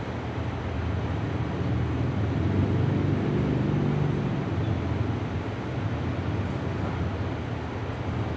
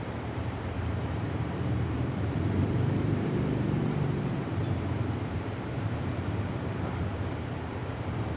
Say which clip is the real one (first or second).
first